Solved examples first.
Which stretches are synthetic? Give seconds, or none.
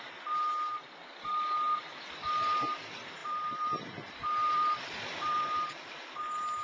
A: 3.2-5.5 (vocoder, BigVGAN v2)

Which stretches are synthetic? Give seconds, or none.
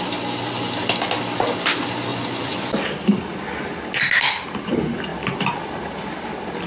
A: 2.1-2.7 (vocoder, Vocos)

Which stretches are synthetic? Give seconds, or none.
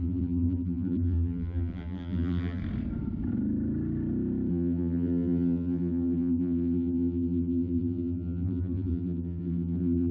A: 0.0-2.6 (vocoder, BigVGAN v2); 4.5-10.1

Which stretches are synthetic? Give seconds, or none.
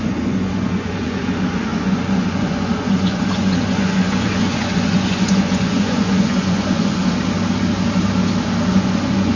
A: 0.0-7.0 (vocoder, Vocos); 8.7-9.4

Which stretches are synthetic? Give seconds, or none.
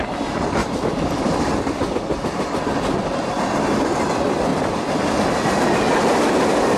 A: none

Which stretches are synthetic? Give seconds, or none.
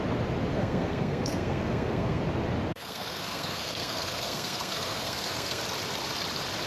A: 0.5-2.2 (codec, SNAC); 2.7-5.6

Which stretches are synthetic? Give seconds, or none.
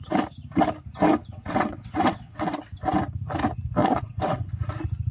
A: 1.3-2.7 (vocoder, WaveNeXt); 3.8-4.5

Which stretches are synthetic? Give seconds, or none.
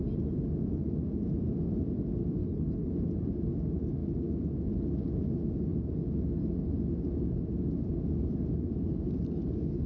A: 2.4-2.9 (codec, HILCodec)